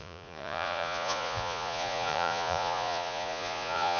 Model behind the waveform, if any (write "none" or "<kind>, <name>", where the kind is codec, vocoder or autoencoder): vocoder, Vocos